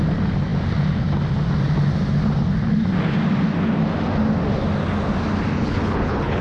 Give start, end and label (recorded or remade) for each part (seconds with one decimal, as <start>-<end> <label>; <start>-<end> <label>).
0.0-5.5 recorded; 5.5-6.4 remade